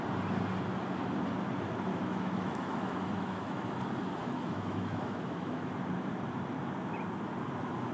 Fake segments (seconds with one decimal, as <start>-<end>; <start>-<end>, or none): 1.9-3.7; 4.2-5.7